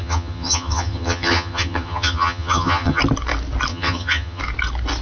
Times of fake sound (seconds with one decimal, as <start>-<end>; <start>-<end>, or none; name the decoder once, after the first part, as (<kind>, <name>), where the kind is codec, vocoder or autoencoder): 0.0-3.0 (vocoder, HiFi-GAN); 3.7-4.4

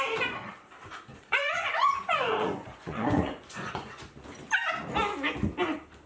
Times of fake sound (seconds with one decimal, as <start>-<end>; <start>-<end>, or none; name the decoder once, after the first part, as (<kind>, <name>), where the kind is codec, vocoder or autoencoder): 1.1-4.0 (vocoder, Vocos)

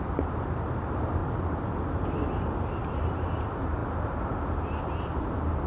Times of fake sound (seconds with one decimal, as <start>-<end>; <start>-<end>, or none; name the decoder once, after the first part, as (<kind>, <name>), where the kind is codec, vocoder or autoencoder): 0.0-1.2 (vocoder, BigVGAN v2); 2.0-5.7